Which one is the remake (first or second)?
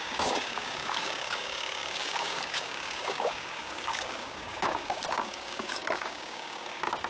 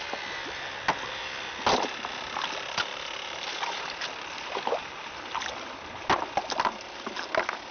first